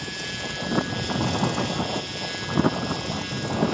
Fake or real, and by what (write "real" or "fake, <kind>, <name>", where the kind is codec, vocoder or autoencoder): real